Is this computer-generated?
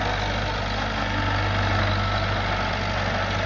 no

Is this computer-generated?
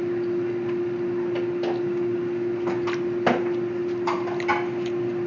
no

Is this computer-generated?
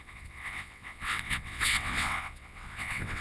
yes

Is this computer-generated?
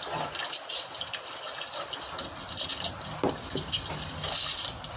no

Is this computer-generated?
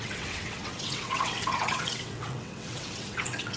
yes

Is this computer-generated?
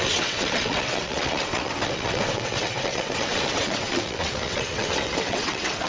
yes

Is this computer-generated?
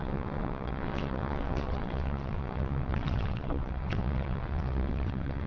yes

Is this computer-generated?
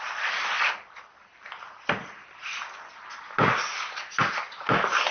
no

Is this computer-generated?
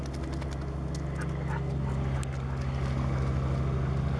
no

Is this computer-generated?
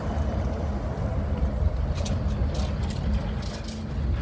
no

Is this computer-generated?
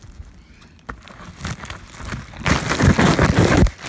no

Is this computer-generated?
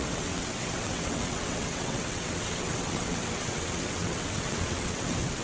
yes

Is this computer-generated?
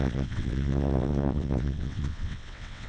yes